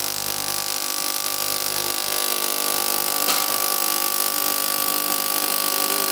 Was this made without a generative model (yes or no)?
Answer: yes